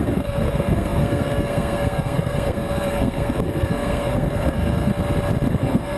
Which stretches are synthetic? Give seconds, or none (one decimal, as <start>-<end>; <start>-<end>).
0.0-4.9; 5.5-6.0